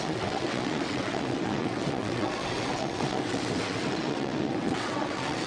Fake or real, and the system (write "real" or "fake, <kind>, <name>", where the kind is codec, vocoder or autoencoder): fake, vocoder, WaveNeXt